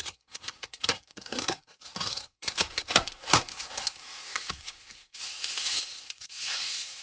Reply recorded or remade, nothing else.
remade